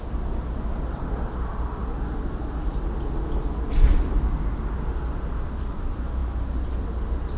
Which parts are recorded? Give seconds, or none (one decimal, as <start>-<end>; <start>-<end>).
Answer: 0.0-7.4